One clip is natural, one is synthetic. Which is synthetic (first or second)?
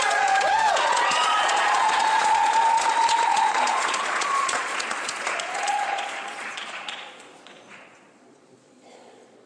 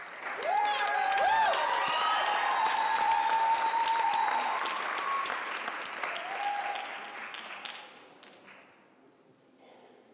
first